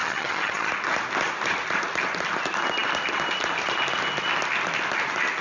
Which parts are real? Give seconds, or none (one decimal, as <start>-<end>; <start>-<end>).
0.7-5.4